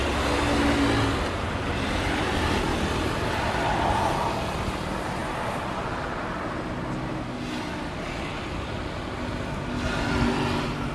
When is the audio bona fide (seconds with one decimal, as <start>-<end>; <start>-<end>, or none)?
0.0-10.9